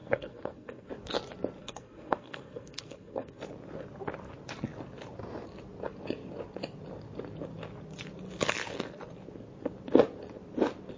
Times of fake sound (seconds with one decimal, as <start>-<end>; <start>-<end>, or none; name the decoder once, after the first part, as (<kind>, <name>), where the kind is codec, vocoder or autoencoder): 0.0-0.9 (codec, SNAC); 1.6-3.4